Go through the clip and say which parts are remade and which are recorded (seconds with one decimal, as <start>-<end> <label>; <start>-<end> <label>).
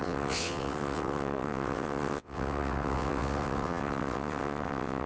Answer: 0.0-5.1 remade